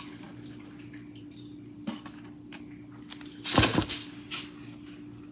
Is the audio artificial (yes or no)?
no